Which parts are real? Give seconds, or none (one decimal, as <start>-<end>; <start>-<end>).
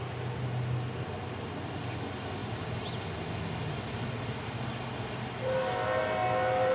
0.0-6.7